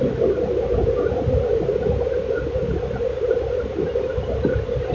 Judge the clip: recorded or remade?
recorded